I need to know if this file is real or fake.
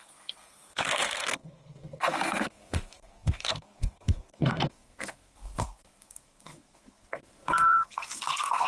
fake